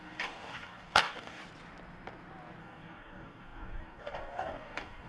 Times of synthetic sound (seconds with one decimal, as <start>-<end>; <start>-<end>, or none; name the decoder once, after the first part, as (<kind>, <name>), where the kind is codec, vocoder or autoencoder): 0.0-1.4 (codec, DAC); 2.6-5.1